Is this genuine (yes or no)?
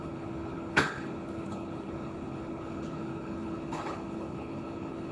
no